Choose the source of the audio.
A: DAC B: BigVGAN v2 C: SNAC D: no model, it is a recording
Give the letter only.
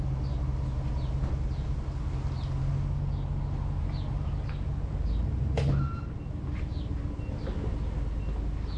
D